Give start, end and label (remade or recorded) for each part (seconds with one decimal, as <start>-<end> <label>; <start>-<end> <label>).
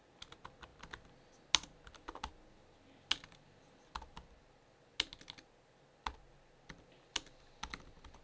0.0-8.2 recorded